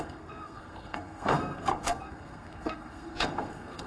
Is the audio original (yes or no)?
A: no